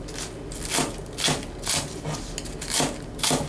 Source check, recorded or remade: recorded